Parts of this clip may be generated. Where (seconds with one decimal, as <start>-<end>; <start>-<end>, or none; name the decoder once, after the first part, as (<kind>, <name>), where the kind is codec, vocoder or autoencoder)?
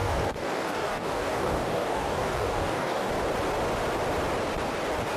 0.0-3.1 (codec, DAC)